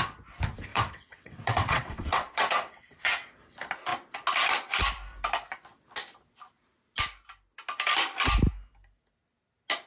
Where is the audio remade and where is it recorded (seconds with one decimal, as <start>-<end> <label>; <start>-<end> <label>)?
0.0-0.7 recorded; 0.7-3.3 remade; 3.3-9.9 recorded